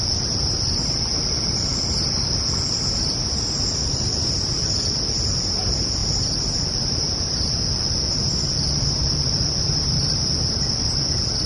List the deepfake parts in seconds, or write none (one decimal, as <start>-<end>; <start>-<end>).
0.0-1.7; 3.0-11.5